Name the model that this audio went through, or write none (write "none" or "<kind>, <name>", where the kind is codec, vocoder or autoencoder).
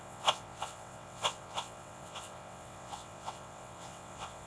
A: vocoder, WaveNeXt